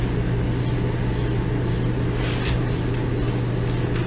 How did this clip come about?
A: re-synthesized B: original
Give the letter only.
B